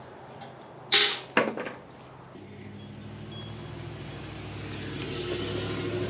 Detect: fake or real real